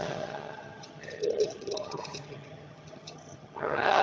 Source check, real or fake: fake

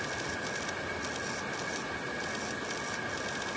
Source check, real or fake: real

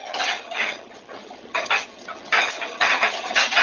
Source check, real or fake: fake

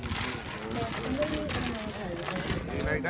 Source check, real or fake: real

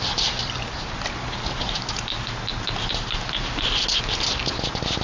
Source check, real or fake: real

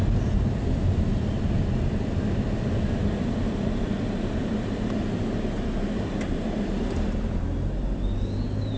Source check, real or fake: real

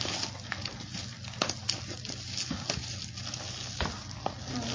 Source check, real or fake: real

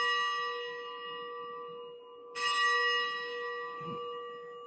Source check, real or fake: real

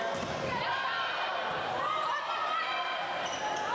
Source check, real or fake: real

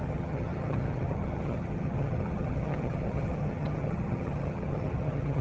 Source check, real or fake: fake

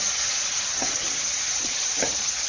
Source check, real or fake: fake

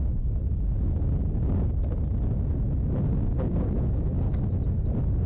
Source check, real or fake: real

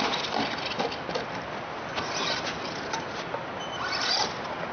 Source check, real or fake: real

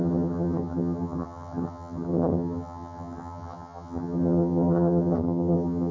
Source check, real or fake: fake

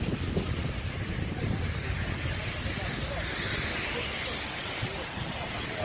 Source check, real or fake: real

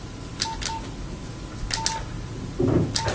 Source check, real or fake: real